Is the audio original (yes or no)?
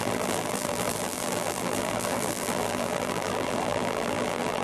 no